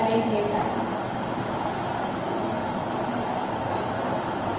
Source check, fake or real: real